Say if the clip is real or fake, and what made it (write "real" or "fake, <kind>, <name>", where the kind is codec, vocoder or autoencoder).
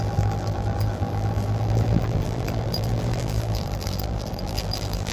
fake, vocoder, BigVGAN v2